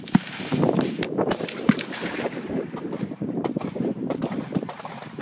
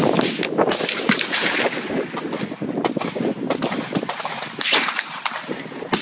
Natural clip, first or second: second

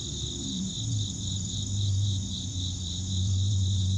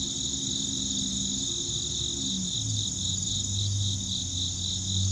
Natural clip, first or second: second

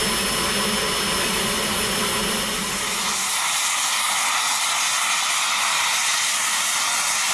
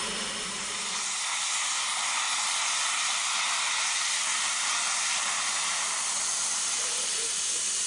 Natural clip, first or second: first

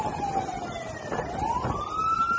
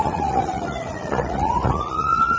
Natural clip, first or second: first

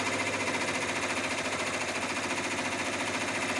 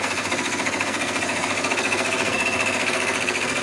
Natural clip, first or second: first